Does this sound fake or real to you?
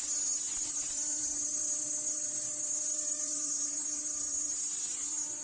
fake